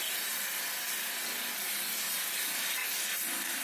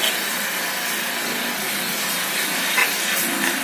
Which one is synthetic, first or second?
first